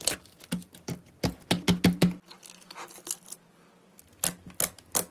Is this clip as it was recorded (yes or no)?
yes